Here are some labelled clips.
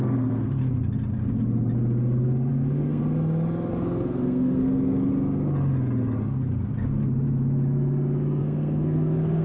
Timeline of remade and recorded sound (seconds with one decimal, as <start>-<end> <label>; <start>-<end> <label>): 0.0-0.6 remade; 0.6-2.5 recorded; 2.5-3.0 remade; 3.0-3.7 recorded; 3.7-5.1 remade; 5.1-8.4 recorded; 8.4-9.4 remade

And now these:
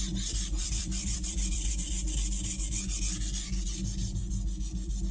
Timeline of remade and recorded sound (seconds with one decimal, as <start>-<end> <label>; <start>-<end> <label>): 0.0-0.6 recorded; 0.6-1.7 remade; 1.7-5.1 recorded

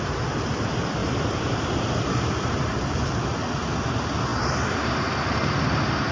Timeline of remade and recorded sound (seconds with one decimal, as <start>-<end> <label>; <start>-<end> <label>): 0.0-1.0 recorded; 1.0-3.1 remade; 3.1-6.1 recorded